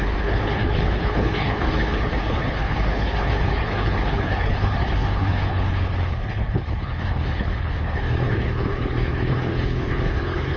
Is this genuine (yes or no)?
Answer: no